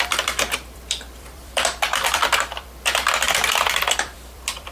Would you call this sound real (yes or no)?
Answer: no